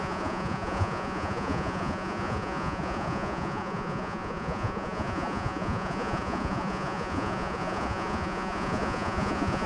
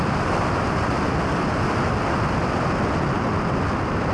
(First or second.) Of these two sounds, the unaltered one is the second